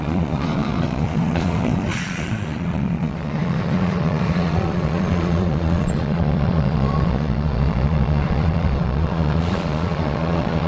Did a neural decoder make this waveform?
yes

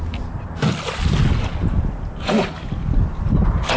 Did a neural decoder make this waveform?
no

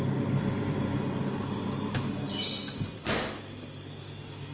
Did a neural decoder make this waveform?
no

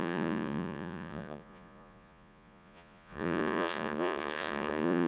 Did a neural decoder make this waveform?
yes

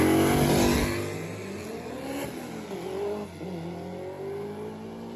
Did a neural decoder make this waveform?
no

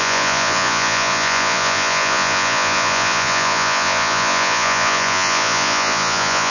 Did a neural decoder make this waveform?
yes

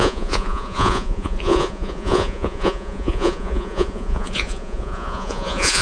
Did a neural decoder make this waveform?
yes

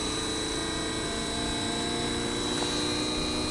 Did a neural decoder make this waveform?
no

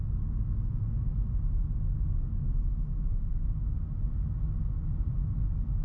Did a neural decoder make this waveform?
no